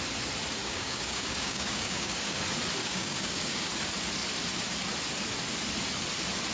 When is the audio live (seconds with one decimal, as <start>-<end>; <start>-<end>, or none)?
0.0-0.6; 2.4-2.8; 3.7-6.5